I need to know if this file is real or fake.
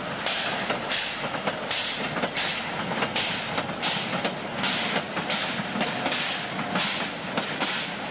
real